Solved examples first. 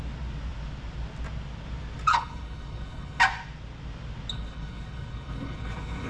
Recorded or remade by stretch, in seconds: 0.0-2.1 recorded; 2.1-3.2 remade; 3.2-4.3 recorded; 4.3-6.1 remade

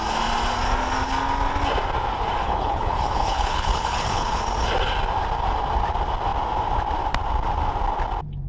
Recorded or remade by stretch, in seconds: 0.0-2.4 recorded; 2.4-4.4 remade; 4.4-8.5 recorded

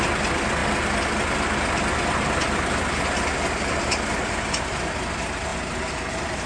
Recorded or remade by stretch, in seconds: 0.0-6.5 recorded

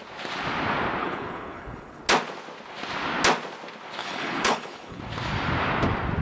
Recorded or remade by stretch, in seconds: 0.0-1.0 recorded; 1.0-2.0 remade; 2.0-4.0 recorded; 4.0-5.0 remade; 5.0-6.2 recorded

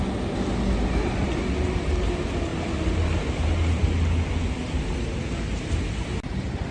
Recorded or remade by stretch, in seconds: 0.0-6.7 recorded

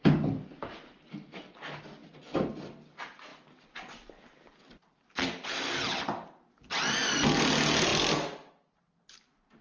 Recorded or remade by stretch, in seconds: 0.0-9.6 recorded